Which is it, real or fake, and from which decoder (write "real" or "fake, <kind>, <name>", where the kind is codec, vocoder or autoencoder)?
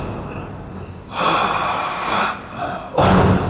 real